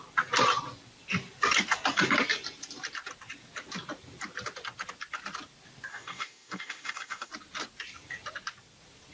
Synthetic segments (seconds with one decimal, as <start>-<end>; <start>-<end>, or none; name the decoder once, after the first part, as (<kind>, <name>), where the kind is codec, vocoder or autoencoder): 5.9-7.3 (codec, DAC)